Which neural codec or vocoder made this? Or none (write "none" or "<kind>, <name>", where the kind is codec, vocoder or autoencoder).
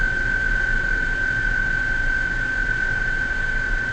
none